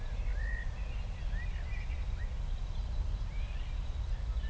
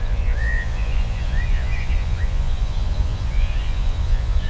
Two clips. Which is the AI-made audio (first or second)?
second